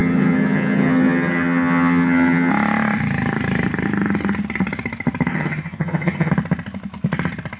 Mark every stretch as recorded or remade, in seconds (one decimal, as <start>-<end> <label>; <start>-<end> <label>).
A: 0.0-2.5 remade; 2.5-5.3 recorded; 5.3-6.3 remade; 6.3-7.6 recorded